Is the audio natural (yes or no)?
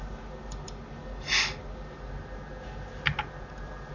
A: yes